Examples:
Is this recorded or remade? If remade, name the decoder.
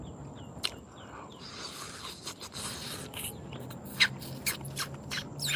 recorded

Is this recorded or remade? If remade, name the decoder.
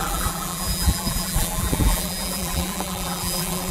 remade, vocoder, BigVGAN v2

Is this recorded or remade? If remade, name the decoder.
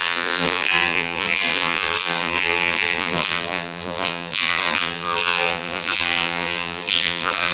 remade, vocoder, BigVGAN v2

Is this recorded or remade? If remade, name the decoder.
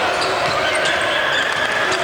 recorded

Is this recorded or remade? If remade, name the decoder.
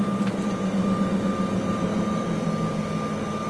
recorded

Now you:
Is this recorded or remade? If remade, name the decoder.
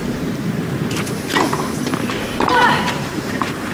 remade, vocoder, BigVGAN v2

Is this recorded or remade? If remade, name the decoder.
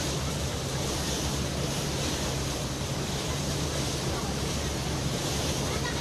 remade, vocoder, BigVGAN v2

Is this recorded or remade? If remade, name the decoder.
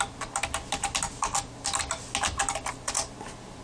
recorded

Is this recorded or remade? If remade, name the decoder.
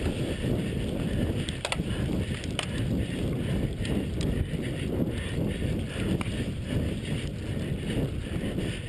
recorded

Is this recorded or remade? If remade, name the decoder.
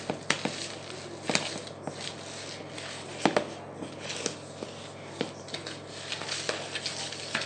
recorded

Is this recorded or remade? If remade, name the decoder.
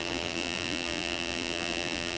remade, vocoder, BigVGAN v2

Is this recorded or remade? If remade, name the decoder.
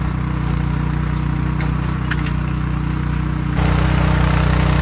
recorded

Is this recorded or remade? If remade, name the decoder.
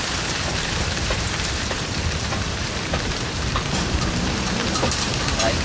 remade, vocoder, BigVGAN v2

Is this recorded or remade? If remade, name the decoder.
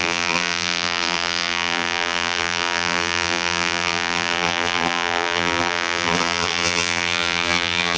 remade, vocoder, BigVGAN v2